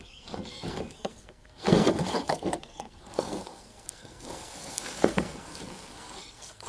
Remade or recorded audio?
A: remade